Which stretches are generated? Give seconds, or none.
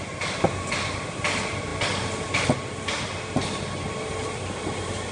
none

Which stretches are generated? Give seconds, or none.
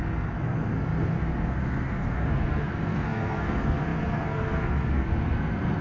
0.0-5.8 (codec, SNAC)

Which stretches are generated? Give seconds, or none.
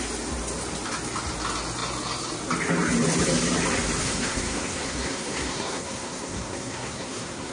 4.0-7.5 (codec, SNAC)